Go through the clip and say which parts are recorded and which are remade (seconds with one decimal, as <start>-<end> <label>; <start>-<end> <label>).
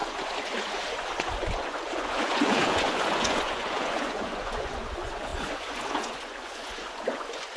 0.0-7.6 remade